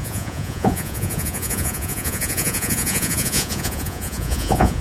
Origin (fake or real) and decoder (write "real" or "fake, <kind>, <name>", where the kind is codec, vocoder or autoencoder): fake, vocoder, Vocos